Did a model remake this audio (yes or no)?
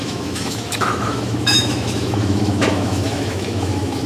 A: yes